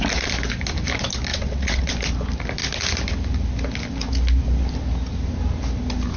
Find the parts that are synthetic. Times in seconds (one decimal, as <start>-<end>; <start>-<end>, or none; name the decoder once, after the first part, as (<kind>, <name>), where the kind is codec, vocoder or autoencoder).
1.3-1.9 (vocoder, WaveNeXt)